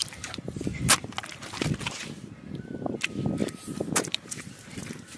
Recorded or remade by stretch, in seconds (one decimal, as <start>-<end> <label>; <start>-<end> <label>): 0.0-0.6 remade; 0.6-3.4 recorded; 3.4-5.2 remade